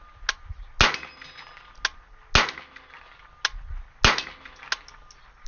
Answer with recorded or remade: recorded